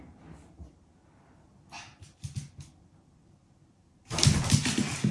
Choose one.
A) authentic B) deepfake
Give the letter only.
A